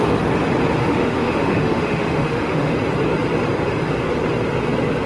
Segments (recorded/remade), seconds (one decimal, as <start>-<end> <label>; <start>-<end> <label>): 0.0-0.8 recorded; 0.8-2.7 remade; 2.7-5.1 recorded